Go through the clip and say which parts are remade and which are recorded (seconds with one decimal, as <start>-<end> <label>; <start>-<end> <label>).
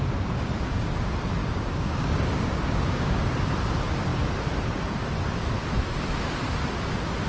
0.0-1.4 recorded; 1.4-3.2 remade; 3.2-7.3 recorded